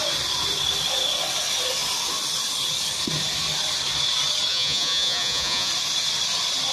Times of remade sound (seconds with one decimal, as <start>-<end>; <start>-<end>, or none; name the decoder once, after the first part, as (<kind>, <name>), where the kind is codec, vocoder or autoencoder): 4.5-5.7 (vocoder, Vocos)